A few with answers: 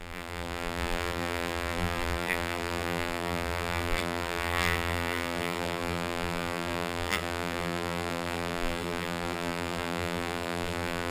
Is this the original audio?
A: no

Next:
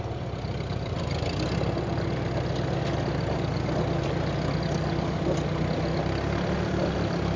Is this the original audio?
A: yes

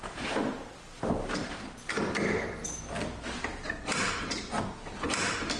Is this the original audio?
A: yes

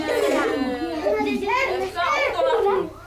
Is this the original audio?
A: yes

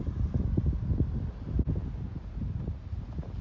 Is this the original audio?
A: yes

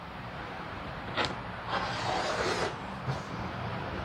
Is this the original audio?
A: no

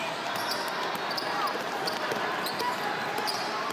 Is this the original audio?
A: yes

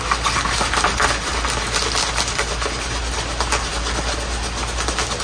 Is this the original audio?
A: yes